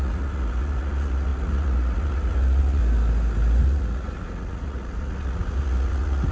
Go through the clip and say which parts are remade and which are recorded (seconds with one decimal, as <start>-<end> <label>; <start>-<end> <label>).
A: 0.0-2.8 remade; 2.8-3.6 recorded; 3.6-6.3 remade